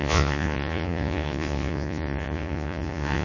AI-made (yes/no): yes